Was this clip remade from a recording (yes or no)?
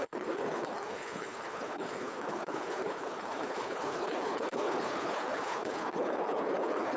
yes